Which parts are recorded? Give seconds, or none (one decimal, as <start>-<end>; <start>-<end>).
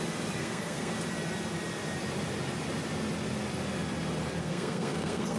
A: 0.0-0.4; 0.9-4.4